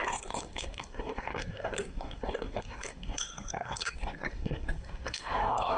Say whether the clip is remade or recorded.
remade